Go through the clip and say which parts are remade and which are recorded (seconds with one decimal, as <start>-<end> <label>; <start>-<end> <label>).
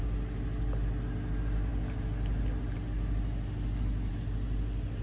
0.0-5.0 recorded